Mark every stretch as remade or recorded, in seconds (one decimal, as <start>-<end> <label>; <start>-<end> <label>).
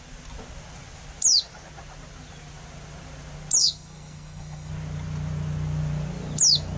0.0-3.6 recorded; 3.6-4.7 remade; 4.7-6.8 recorded